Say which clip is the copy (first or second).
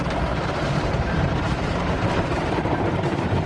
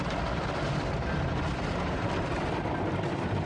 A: first